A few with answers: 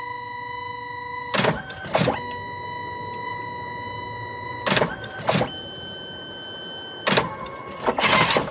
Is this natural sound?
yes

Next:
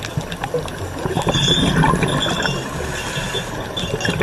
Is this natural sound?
yes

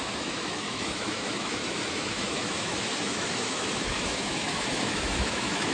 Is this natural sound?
no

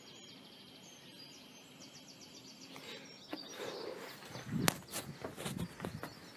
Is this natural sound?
yes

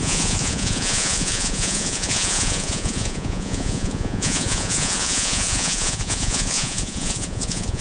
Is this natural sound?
no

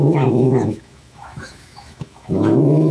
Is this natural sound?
no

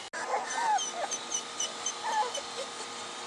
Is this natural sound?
yes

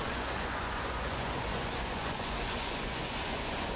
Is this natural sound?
no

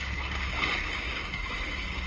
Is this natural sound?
no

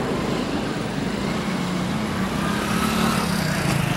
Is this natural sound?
yes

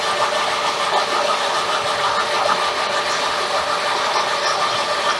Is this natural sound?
yes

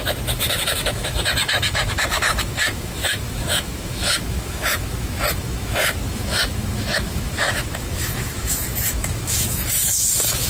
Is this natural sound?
no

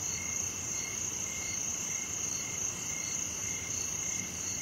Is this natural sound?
no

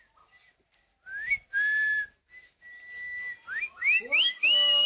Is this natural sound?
yes